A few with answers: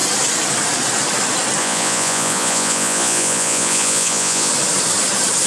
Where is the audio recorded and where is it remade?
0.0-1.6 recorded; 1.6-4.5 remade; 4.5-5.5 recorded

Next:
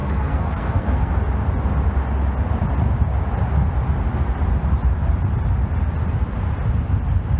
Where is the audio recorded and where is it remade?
0.0-1.1 remade; 1.1-7.4 recorded